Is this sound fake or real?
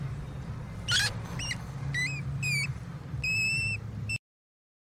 real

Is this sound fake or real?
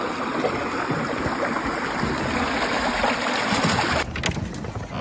real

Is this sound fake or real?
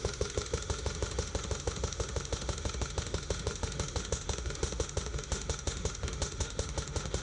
fake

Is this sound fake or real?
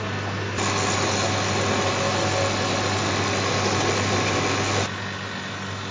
real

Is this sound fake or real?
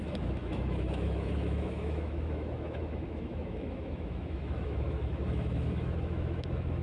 fake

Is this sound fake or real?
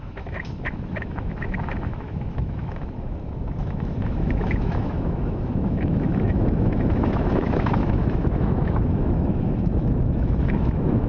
fake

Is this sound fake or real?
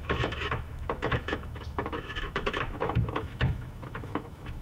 fake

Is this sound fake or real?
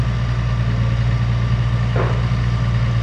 real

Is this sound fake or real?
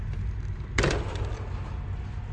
real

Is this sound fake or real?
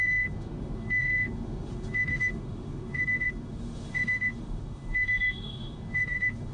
fake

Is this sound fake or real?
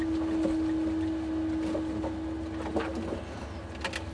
real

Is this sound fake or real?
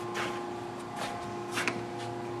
real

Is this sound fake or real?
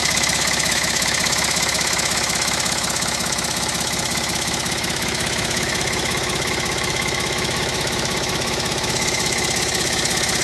fake